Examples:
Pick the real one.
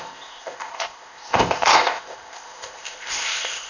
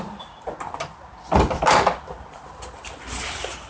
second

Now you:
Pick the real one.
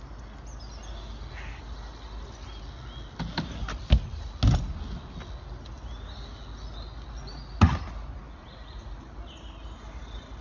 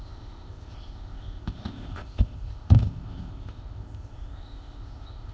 first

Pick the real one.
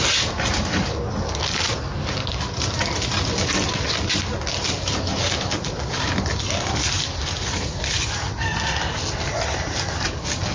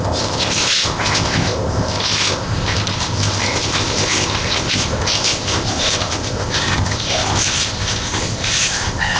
first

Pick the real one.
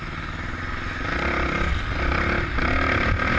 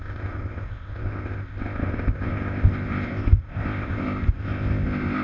first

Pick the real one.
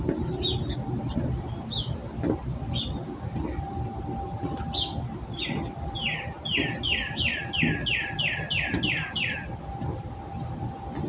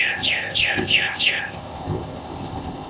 first